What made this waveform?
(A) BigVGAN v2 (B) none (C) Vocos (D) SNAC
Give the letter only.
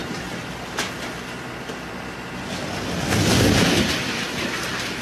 B